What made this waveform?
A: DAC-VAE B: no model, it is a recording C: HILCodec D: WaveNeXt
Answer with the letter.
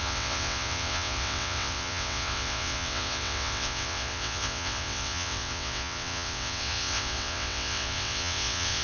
D